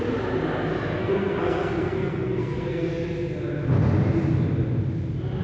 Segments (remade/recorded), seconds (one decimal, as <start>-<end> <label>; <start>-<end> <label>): 0.0-1.0 recorded; 1.0-2.9 remade; 2.9-5.4 recorded